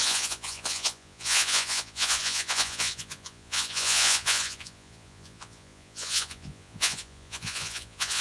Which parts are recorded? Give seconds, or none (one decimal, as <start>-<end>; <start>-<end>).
none

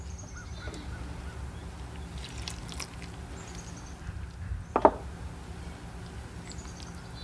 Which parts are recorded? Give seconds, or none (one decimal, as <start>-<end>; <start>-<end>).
0.0-7.2

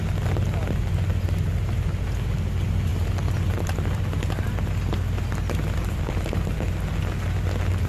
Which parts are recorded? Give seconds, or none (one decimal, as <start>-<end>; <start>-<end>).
0.0-7.9

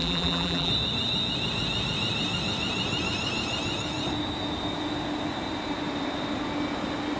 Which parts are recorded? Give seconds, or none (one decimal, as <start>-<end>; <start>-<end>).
0.7-7.2

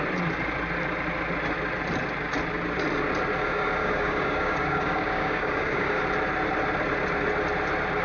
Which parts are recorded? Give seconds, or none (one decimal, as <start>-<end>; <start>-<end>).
0.0-3.4; 6.0-8.0

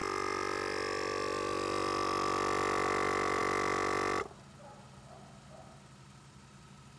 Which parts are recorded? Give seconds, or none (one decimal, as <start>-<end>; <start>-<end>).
0.0-7.0